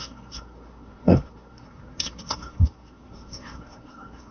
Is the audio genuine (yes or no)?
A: no